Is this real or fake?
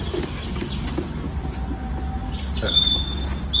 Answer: real